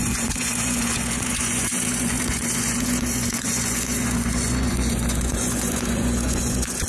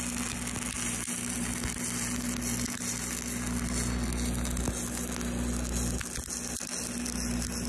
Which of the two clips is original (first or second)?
second